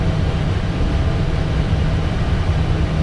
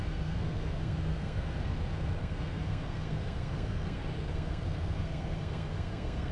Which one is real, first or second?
first